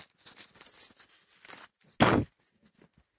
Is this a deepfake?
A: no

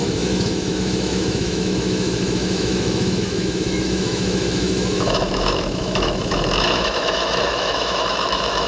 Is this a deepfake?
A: yes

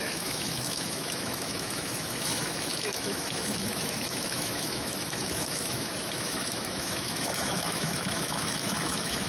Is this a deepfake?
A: yes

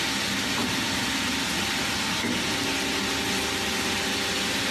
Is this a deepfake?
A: no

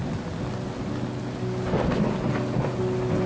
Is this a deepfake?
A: no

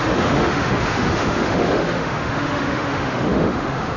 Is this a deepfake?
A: yes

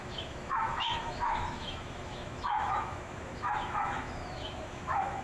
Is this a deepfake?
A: yes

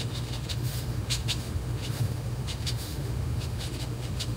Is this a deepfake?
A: yes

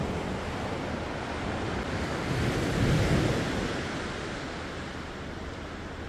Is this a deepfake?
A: no